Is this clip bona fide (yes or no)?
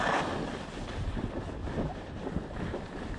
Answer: yes